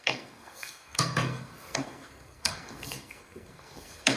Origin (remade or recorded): remade